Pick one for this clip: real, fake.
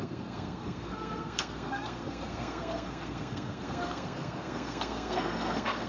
fake